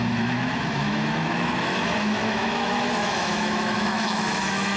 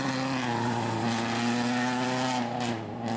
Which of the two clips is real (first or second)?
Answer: second